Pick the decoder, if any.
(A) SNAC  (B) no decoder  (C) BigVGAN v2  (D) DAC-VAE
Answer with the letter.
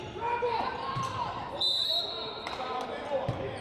C